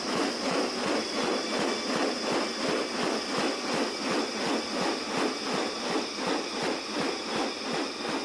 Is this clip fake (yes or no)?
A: no